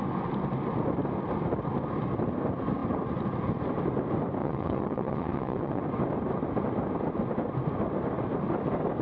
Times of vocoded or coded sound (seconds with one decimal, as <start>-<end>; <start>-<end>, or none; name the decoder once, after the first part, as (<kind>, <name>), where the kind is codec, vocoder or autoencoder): 4.4-5.8 (vocoder, WaveNeXt)